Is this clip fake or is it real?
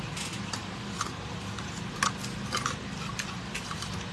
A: real